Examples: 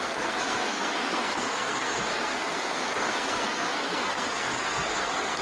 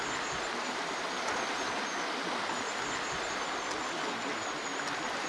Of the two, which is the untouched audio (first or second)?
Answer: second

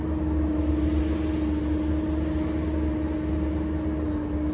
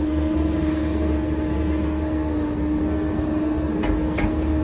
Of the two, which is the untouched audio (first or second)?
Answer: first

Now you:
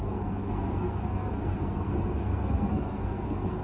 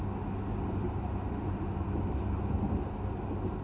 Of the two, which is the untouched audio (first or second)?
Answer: second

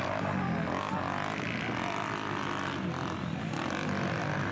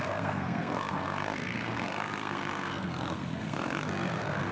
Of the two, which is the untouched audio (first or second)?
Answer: first